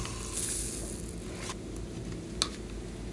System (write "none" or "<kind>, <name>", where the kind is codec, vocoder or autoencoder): none